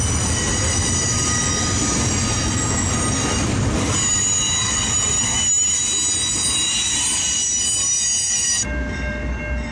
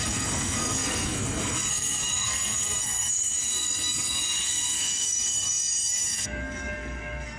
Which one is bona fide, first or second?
first